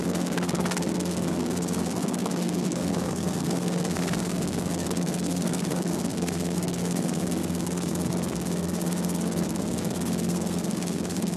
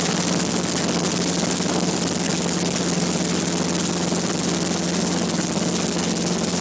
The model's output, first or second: first